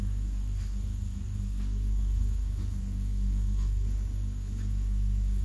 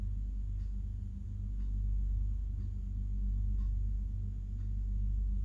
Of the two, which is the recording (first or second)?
second